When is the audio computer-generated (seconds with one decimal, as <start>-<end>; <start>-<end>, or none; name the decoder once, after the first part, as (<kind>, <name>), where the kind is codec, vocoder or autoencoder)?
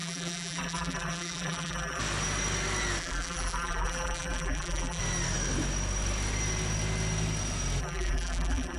0.0-2.0 (vocoder, BigVGAN v2); 3.0-5.0; 7.8-8.8